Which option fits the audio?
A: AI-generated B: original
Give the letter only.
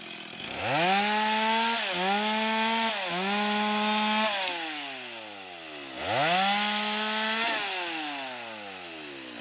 B